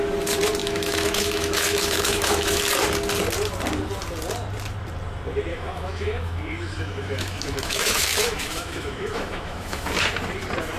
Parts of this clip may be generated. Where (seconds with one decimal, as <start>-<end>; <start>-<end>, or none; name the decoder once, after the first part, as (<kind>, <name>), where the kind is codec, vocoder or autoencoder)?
0.6-2.6 (autoencoder, DAC-VAE); 5.5-9.9

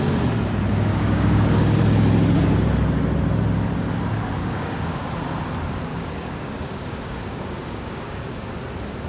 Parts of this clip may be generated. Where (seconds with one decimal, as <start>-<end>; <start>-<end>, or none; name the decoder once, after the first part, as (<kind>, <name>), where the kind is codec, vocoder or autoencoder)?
0.7-1.8 (codec, DAC); 4.4-5.1; 5.9-8.5

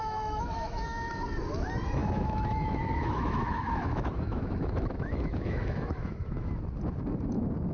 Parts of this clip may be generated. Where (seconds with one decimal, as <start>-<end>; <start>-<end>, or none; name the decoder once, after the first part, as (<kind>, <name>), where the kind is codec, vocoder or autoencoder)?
0.0-1.1 (autoencoder, DAC-VAE); 2.0-6.5

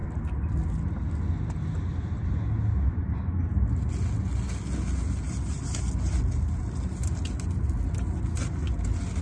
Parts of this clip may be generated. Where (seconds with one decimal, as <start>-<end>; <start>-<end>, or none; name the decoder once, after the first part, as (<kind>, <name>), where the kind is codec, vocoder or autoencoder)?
none

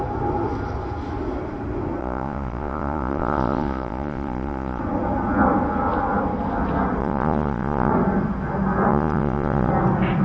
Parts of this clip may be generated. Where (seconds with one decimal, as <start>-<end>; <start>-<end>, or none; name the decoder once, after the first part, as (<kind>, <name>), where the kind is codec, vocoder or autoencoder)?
2.0-4.8 (vocoder, Vocos); 7.0-7.9; 8.9-9.7

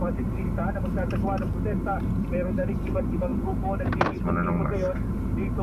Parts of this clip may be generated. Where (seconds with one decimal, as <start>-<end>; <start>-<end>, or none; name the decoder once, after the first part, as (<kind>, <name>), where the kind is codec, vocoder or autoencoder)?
none

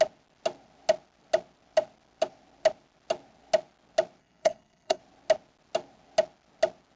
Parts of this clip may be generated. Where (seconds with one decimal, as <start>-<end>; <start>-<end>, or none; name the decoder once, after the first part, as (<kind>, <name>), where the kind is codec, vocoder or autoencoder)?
4.2-5.0 (codec, SNAC)

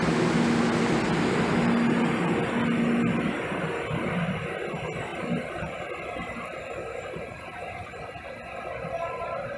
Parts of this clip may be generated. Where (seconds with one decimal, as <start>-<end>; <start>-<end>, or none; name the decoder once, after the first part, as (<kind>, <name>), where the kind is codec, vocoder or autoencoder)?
5.1-7.6 (vocoder, BigVGAN v2)